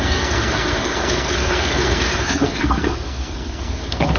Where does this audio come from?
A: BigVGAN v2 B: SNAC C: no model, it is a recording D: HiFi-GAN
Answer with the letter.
B